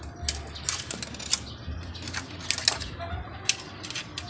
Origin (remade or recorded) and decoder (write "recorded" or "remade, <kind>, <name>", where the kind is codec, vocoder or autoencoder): recorded